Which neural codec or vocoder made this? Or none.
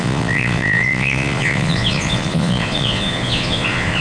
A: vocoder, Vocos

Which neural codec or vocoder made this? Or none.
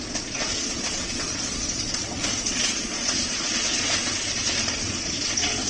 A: vocoder, Vocos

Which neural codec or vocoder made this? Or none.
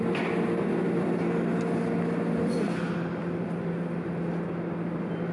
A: none